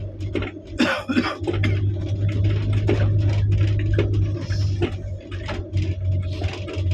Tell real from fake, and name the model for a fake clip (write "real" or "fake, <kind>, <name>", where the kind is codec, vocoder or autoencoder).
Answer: real